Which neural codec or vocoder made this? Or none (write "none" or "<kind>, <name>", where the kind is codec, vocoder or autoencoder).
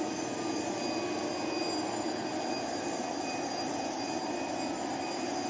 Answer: none